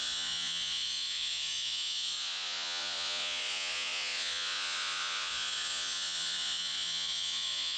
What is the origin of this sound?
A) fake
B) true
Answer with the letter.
A